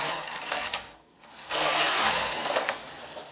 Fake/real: fake